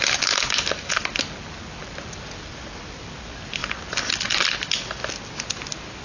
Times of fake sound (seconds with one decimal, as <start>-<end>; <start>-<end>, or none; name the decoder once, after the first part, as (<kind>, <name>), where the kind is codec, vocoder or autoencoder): 1.8-3.1 (vocoder, BigVGAN v2); 3.6-5.4